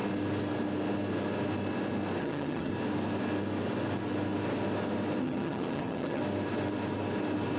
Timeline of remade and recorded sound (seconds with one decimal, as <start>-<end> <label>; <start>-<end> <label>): 0.0-2.2 recorded; 2.2-2.7 remade; 2.7-5.2 recorded; 5.2-6.2 remade; 6.2-7.6 recorded